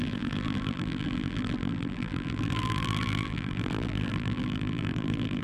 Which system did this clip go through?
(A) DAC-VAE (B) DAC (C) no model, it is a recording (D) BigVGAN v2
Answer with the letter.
D